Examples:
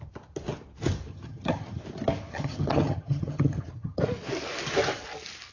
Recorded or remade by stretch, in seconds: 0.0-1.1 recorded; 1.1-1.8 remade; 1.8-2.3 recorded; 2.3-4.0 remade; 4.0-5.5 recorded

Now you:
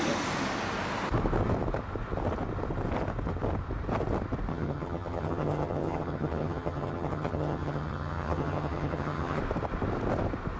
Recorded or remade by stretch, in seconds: 0.0-4.5 recorded; 4.5-9.4 remade; 9.4-10.6 recorded